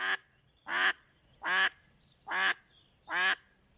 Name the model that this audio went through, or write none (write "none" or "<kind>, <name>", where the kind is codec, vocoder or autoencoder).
none